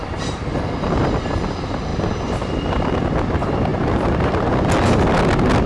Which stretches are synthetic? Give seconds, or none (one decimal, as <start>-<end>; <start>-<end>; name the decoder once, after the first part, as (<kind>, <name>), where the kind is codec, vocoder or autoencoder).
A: 1.9-2.9 (vocoder, BigVGAN v2); 3.7-4.5